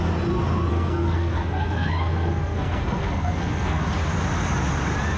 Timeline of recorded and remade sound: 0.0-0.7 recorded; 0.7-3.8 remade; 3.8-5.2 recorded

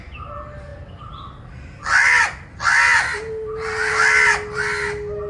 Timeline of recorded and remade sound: 0.0-5.3 recorded

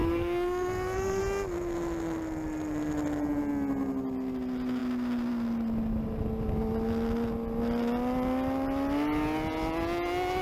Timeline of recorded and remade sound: 0.0-1.2 remade; 1.2-10.4 recorded

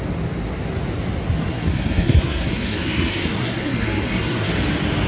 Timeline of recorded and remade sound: 0.0-1.4 recorded; 1.4-4.5 remade; 4.5-5.1 recorded

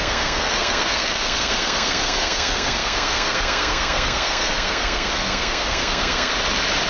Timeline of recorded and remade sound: 0.0-6.3 remade; 6.3-6.9 recorded

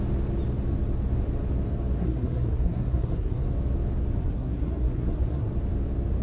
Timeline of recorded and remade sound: 0.0-2.0 recorded; 2.0-3.4 remade; 3.4-4.2 recorded; 4.2-5.5 remade; 5.5-6.2 recorded

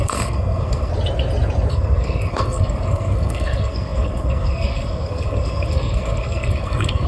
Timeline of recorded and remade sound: 0.0-0.9 remade; 0.9-1.7 recorded; 1.7-7.1 remade

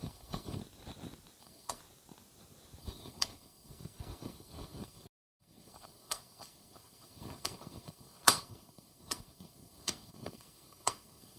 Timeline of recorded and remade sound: 0.0-0.6 remade; 0.6-1.4 recorded; 1.4-1.8 remade; 1.8-2.8 recorded; 2.8-11.4 remade